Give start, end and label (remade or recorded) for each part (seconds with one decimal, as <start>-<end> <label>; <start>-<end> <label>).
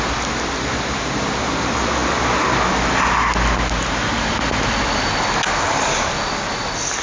0.0-7.0 recorded